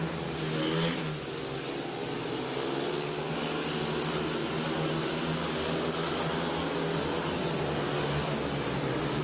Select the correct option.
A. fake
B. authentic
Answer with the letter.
B